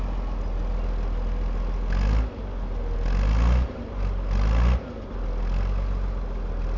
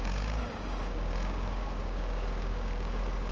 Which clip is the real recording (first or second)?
first